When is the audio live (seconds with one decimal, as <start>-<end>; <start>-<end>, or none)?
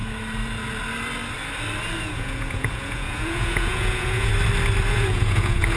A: 0.0-2.0; 4.3-4.9